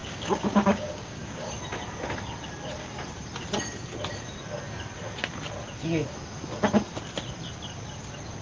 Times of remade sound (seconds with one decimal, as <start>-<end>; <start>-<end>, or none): 0.0-1.5